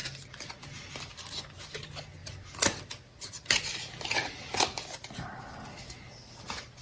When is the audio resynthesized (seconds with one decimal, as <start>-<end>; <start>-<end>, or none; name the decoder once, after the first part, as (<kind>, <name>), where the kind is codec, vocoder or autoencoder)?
none